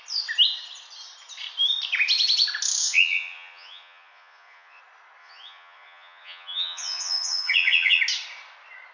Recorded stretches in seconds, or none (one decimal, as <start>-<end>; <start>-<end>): 0.0-2.8; 4.8-5.2; 8.0-8.9